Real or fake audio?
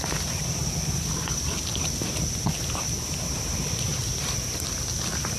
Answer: real